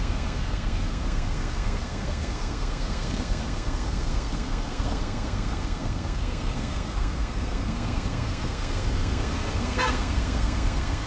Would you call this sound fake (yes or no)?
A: yes